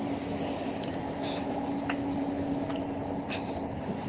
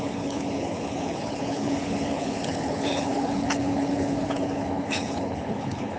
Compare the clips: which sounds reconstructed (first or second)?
second